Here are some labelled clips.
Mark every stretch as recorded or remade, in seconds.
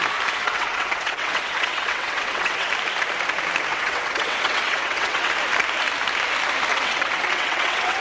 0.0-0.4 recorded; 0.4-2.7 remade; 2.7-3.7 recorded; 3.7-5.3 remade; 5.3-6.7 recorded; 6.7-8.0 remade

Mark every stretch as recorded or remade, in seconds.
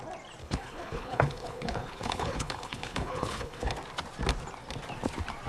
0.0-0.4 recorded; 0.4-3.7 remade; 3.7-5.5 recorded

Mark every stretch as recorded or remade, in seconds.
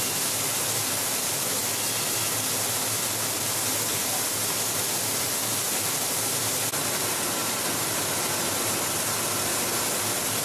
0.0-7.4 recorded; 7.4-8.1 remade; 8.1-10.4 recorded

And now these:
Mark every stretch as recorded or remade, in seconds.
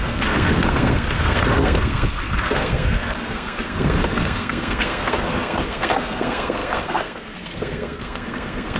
0.0-8.8 remade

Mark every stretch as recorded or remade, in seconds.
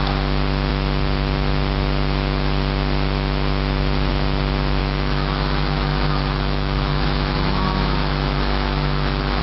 0.0-4.8 recorded; 4.8-9.4 remade